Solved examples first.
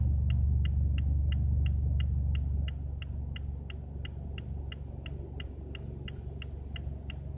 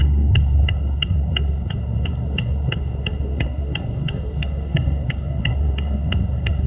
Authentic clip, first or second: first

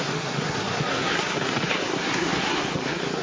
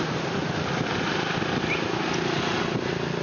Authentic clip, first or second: second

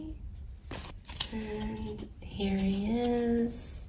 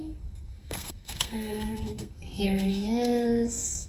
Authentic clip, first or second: first